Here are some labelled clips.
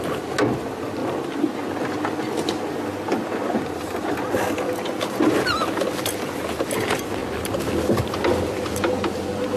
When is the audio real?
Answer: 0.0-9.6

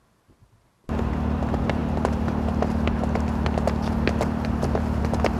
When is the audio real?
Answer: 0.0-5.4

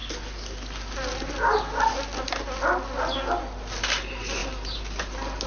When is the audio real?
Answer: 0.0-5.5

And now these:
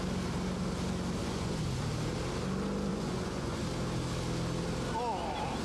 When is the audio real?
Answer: 0.0-1.2; 1.8-2.9; 3.6-5.6